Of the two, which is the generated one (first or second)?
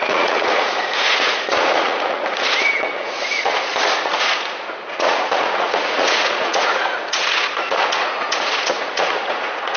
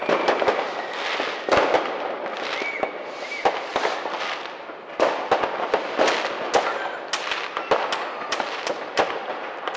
first